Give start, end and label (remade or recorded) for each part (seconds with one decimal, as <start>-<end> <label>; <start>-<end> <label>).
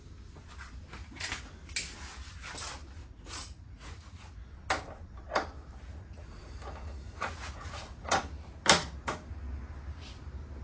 0.0-0.9 recorded; 0.9-1.5 remade; 1.5-3.0 recorded; 3.0-4.5 remade; 4.5-5.9 recorded; 5.9-8.2 remade; 8.2-10.6 recorded